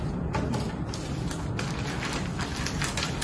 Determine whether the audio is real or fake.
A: real